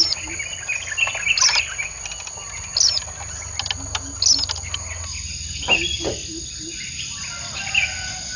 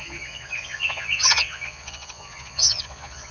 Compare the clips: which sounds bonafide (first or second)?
first